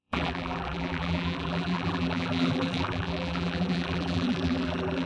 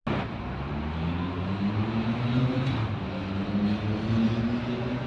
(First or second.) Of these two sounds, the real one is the second